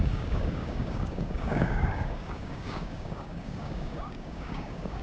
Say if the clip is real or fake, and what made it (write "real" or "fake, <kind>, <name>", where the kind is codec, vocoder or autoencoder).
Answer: fake, codec, DAC